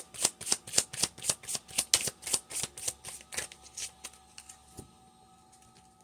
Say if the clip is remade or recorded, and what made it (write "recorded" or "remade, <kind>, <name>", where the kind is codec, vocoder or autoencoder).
recorded